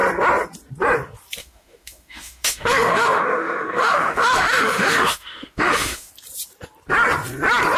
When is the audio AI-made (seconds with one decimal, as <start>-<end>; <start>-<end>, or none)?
1.4-6.1